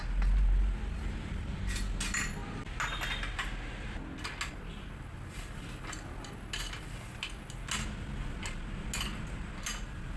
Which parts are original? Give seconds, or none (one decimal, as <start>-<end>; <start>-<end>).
0.0-10.2